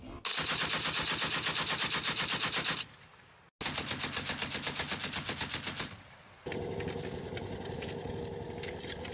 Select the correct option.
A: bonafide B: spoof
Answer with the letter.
A